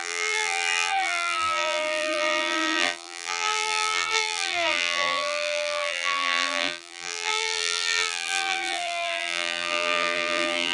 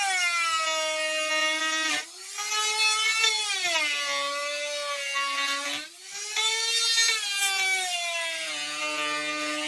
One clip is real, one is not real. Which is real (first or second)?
second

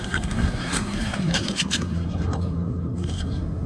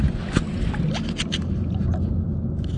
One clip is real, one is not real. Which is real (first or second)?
second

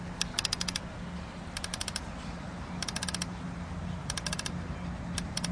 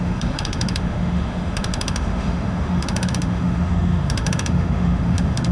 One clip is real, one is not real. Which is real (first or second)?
first